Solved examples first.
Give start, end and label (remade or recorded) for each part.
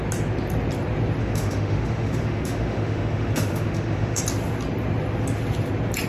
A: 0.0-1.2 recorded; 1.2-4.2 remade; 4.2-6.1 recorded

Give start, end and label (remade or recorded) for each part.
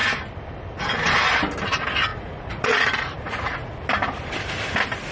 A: 0.0-2.1 recorded; 2.1-3.7 remade; 3.7-5.1 recorded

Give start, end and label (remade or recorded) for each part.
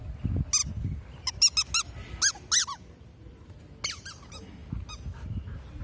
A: 0.0-2.6 recorded; 2.6-3.6 remade; 3.6-5.8 recorded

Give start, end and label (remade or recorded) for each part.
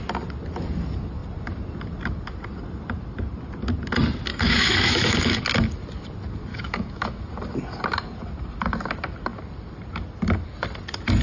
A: 0.0-4.3 recorded; 4.3-5.4 remade; 5.4-6.5 recorded; 6.5-7.2 remade; 7.2-11.2 recorded